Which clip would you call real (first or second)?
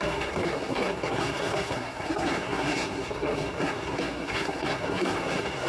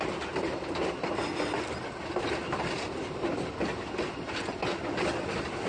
second